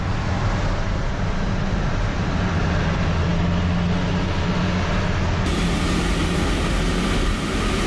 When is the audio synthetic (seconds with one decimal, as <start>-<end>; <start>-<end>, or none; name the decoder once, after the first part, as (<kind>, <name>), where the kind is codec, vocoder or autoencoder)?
none